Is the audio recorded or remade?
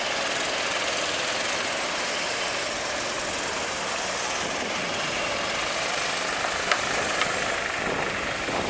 recorded